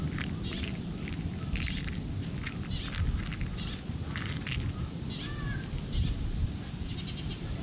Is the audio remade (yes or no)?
no